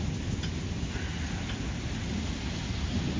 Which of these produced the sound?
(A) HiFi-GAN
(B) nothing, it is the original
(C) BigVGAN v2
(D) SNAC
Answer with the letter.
B